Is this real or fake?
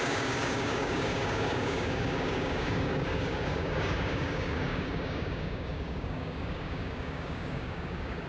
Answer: fake